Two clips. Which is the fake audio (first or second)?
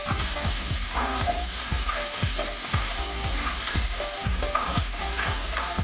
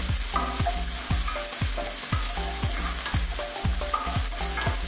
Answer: first